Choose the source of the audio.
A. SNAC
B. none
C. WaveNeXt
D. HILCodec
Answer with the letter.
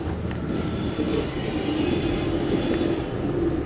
B